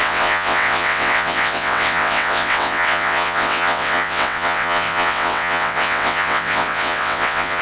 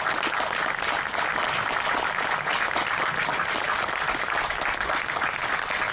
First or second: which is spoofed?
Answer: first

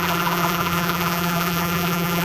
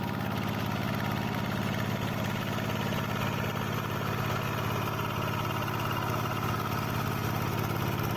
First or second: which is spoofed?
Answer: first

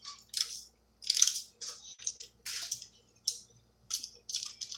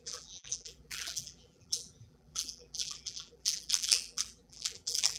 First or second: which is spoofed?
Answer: second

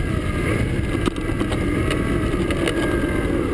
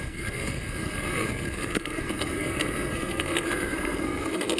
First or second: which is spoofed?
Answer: second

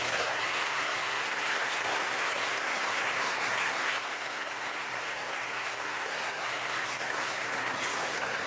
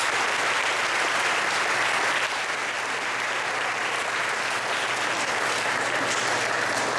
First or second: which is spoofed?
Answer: first